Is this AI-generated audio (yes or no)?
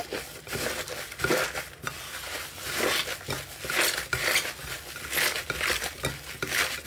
no